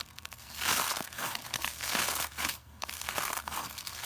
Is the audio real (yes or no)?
no